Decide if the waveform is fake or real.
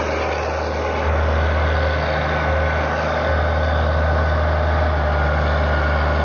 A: real